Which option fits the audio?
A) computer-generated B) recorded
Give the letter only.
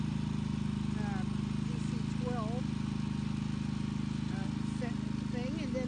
B